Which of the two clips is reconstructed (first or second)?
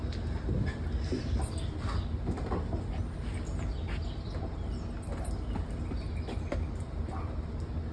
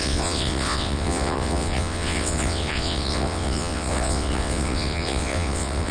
second